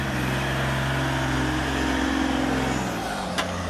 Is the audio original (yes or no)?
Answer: yes